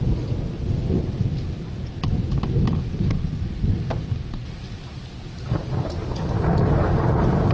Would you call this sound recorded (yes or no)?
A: yes